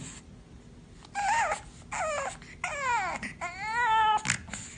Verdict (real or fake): real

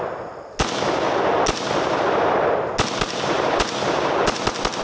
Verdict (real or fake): real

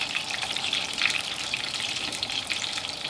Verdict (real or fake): fake